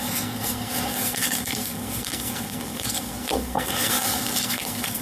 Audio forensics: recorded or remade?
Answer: remade